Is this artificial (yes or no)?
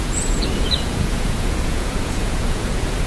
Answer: yes